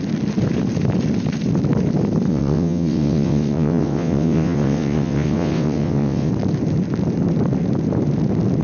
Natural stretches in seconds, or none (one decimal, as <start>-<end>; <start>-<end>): 0.0-2.3; 6.3-8.6